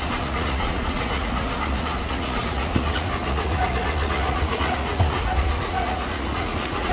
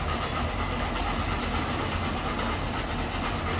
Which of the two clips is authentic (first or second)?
second